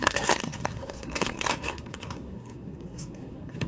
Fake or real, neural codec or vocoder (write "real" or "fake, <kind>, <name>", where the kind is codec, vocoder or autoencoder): fake, codec, SNAC